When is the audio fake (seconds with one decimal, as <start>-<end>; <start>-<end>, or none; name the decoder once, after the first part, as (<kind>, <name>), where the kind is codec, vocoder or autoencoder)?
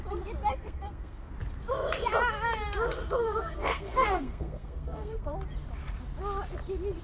0.5-1.3 (codec, SNAC); 3.2-5.3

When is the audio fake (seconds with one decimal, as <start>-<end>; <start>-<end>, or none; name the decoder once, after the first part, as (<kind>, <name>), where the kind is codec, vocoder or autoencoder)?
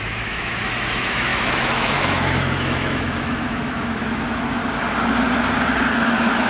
0.0-4.6 (autoencoder, DAC-VAE); 6.0-6.5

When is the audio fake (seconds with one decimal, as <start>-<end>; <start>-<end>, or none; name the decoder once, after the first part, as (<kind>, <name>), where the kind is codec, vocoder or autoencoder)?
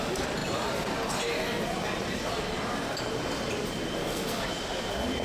4.0-4.5 (codec, SNAC)